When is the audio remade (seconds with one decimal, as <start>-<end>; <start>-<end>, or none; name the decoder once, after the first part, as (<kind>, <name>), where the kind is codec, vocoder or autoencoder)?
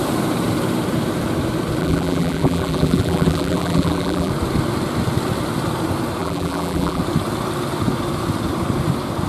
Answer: 1.8-4.3 (vocoder, BigVGAN v2); 6.2-7.0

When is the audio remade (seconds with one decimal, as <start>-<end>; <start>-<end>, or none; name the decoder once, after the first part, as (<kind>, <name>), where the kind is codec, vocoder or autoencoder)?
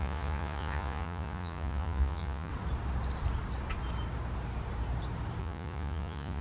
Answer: 0.0-2.5 (vocoder, Vocos); 5.4-6.4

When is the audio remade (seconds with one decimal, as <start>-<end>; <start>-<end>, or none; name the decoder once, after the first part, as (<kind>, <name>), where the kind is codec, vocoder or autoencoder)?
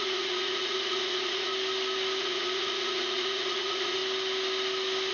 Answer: 0.0-1.5 (vocoder, Vocos); 2.2-4.0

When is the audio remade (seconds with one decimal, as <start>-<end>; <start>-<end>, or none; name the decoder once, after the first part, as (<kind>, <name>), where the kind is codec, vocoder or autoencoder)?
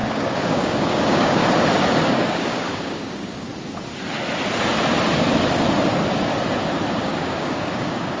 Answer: 0.0-1.4 (codec, DAC); 2.1-3.5; 7.0-8.2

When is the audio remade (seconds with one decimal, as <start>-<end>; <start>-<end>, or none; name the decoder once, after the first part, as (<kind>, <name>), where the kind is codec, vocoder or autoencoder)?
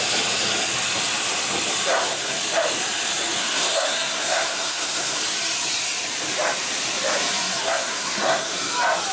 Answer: 1.9-2.4 (codec, SNAC); 3.4-5.2; 7.6-8.5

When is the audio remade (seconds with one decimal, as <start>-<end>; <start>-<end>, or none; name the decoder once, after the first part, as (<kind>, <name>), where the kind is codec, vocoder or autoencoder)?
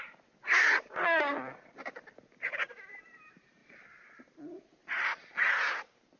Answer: 0.6-1.2 (vocoder, Vocos)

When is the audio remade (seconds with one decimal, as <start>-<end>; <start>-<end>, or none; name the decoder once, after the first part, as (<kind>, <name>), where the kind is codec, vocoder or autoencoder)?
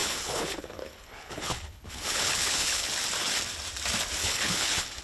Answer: 0.0-2.9 (codec, HILCodec); 4.2-5.0